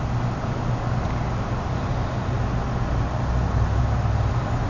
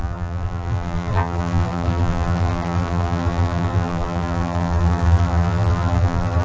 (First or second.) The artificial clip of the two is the second